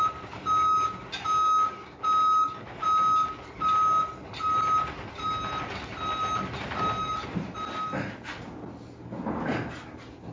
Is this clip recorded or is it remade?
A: recorded